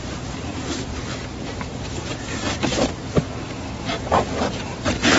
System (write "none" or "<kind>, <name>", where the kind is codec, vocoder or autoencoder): none